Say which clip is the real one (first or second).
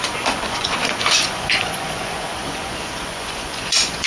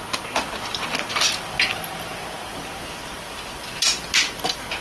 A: second